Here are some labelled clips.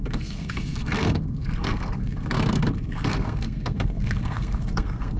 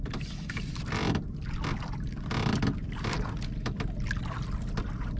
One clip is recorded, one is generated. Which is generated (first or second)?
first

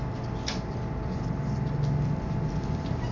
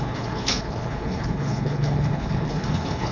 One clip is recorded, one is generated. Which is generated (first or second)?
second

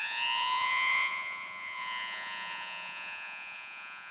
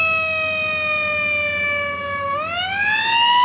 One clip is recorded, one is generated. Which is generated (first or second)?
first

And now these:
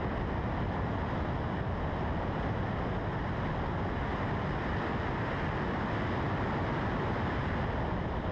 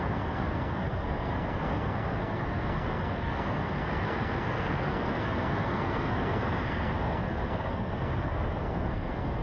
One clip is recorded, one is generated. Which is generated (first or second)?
second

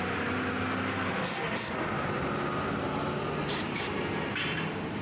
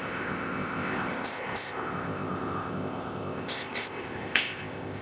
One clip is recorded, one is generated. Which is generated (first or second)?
second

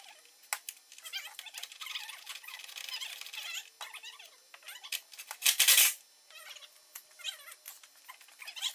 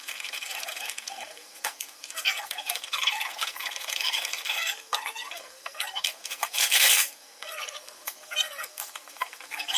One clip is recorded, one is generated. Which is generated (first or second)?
second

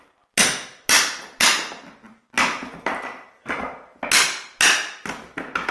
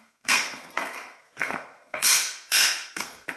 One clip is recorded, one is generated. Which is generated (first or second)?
second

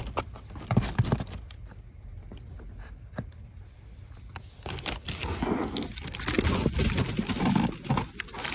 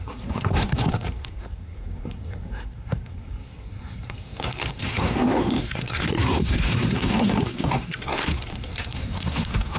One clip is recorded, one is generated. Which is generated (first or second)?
second